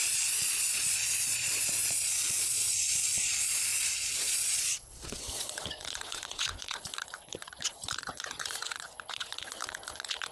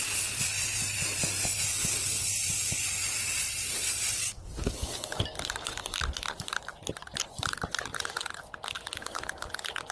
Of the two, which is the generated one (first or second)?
first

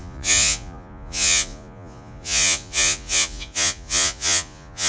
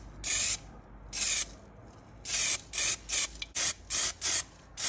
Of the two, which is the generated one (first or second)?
first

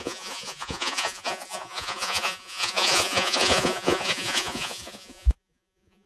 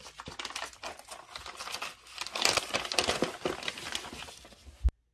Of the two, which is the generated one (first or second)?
first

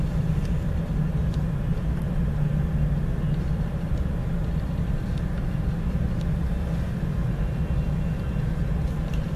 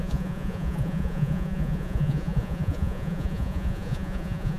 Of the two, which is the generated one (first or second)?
second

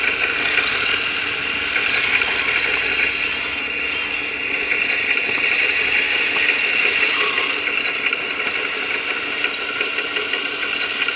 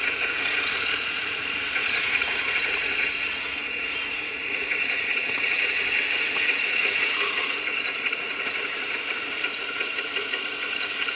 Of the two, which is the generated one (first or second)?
second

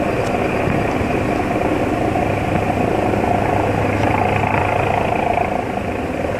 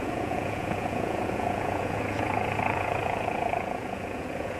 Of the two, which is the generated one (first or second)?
second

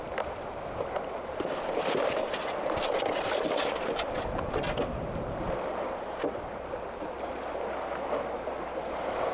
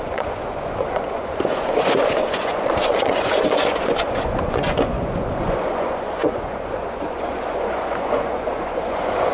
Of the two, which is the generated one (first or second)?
second